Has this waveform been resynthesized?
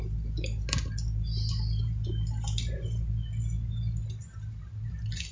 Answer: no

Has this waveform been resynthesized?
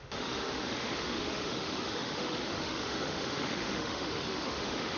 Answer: yes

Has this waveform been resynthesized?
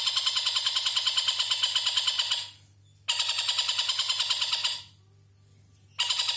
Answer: no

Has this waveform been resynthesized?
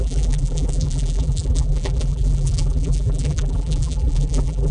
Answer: yes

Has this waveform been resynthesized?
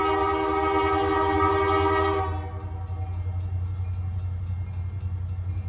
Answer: no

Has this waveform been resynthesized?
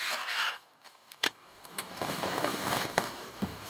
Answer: yes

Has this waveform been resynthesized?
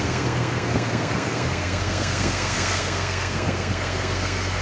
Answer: yes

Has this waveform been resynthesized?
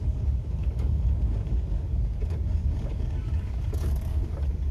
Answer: yes